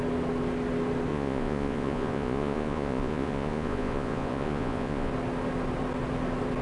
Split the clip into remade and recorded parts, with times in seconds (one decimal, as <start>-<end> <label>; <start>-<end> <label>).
0.0-1.1 recorded; 1.1-5.1 remade; 5.1-6.6 recorded